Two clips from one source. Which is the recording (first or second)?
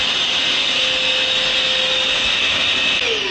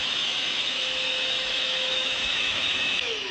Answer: first